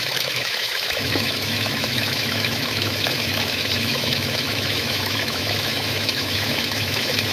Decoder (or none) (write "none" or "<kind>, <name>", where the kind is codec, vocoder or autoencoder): autoencoder, DAC-VAE